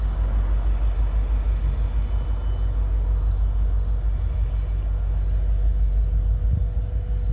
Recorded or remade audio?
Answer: recorded